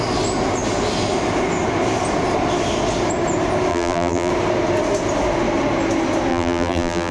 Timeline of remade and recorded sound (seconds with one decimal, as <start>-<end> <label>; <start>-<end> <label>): 0.0-3.7 recorded; 3.7-4.3 remade; 4.3-6.3 recorded; 6.3-7.1 remade